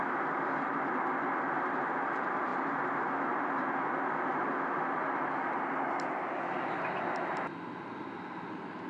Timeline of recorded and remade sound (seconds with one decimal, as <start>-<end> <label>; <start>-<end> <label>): 0.0-8.9 recorded